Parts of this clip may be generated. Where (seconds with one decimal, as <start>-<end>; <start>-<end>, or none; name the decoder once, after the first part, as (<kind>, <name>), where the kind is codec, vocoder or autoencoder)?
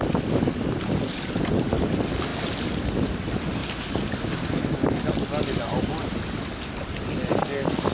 none